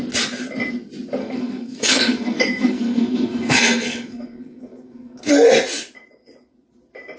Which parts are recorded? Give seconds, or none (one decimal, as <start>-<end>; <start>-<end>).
0.0-1.2; 5.2-7.2